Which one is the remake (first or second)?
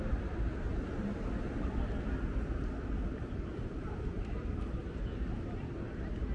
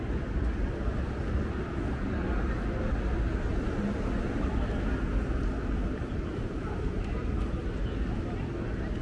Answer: first